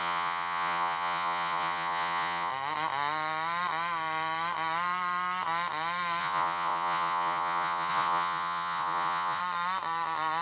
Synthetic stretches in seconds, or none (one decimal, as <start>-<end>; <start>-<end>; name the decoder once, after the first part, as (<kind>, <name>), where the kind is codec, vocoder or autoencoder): 0.0-2.5 (vocoder, Vocos); 6.2-9.4